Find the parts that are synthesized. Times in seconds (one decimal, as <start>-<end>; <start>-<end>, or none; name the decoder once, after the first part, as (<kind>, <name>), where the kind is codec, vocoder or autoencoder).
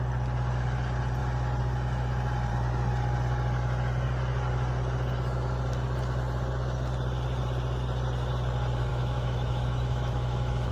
8.9-10.7 (autoencoder, DAC-VAE)